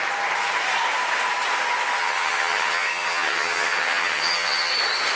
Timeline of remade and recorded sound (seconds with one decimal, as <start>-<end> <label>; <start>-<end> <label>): 0.0-2.0 recorded; 2.0-4.7 remade; 4.7-5.2 recorded